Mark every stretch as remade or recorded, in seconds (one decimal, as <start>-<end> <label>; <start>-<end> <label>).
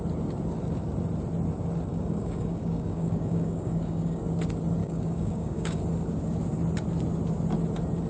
0.0-1.9 recorded; 1.9-4.2 remade; 4.2-4.8 recorded; 4.8-5.8 remade; 5.8-8.1 recorded